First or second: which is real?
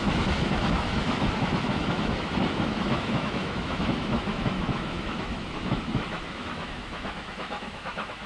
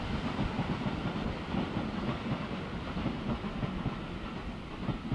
second